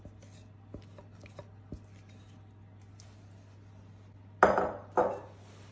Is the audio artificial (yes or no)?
no